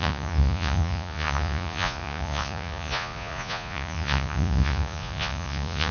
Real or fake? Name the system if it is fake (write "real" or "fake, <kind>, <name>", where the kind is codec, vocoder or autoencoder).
fake, vocoder, Vocos